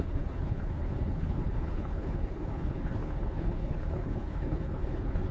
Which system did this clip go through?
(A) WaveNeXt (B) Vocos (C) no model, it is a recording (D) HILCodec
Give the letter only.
D